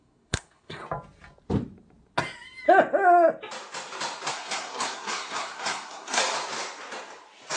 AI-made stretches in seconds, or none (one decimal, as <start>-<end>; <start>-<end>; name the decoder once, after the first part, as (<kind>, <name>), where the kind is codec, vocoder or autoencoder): 0.0-0.8 (codec, SNAC); 4.3-6.2